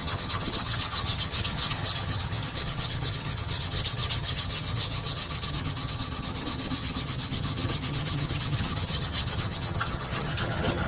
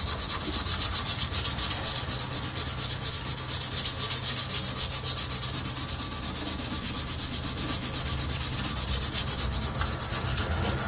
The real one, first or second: second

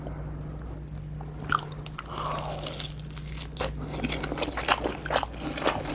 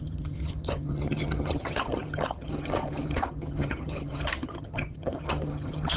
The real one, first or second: first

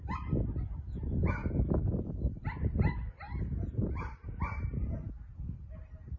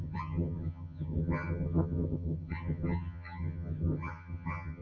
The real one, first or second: first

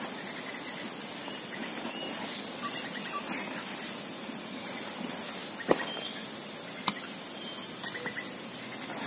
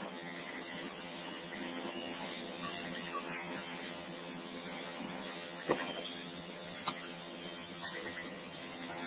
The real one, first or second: first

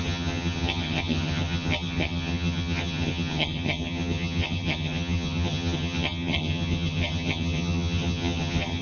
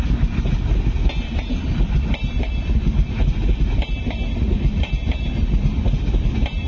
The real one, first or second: second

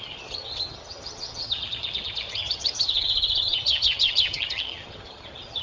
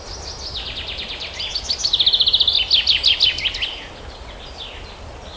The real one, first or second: second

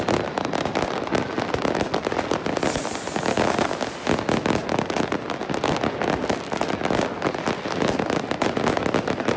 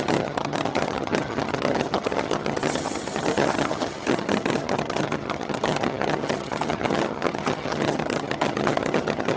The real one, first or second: first